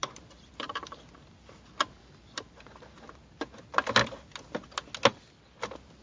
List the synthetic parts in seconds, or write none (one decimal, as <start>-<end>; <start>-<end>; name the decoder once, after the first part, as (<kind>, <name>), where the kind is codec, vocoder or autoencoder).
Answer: 0.0-3.6 (vocoder, BigVGAN v2)